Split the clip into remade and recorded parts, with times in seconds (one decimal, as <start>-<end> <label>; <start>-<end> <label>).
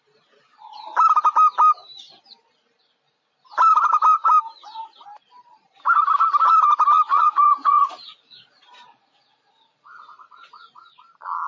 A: 0.0-7.1 recorded; 7.1-10.9 remade; 10.9-11.5 recorded